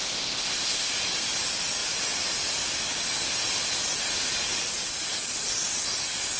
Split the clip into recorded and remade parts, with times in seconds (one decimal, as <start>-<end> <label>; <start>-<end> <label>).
0.0-0.9 remade; 0.9-6.4 recorded